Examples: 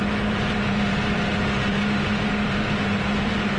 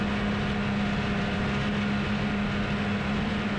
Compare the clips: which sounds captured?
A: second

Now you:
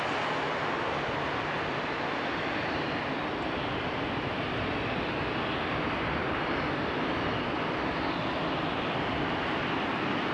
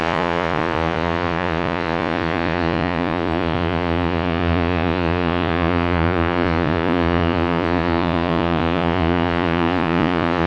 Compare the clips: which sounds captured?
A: first